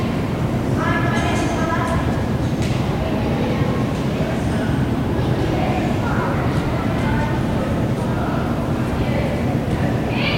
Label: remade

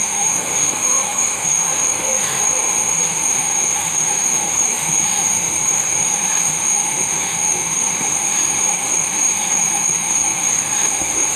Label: remade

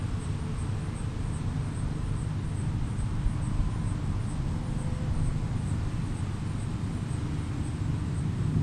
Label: recorded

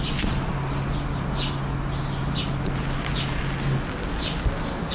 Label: recorded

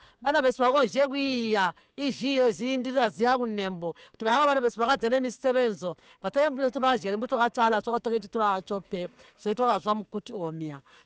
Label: remade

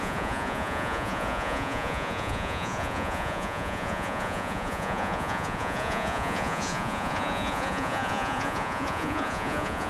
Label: remade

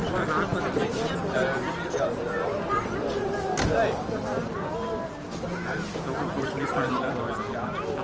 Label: recorded